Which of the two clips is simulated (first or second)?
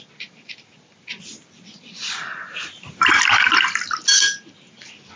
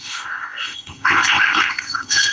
second